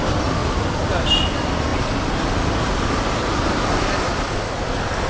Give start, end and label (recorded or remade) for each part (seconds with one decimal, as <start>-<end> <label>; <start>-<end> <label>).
0.0-5.1 recorded